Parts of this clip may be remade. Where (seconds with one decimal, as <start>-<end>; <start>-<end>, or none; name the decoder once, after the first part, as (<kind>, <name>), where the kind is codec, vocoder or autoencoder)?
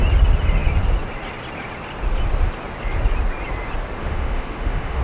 4.0-5.0 (autoencoder, DAC-VAE)